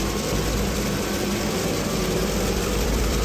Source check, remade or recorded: remade